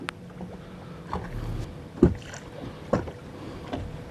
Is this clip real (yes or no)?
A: yes